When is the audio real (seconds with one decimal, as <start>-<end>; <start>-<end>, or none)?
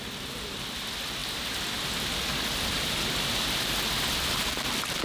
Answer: 0.0-5.0